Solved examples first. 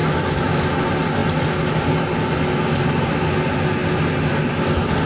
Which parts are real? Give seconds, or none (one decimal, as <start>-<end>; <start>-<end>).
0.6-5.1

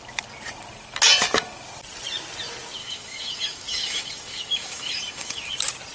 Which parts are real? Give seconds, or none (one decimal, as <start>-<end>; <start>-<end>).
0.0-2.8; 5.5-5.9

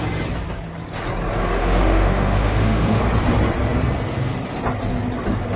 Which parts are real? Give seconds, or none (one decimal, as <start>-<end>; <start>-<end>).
0.0-1.6; 3.0-5.6